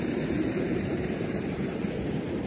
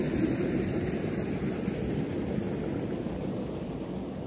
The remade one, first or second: first